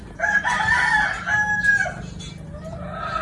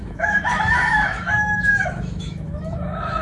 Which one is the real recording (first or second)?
first